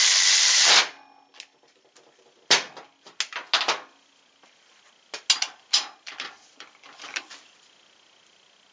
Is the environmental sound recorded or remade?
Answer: recorded